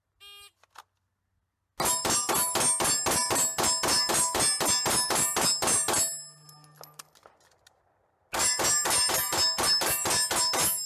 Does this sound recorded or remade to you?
recorded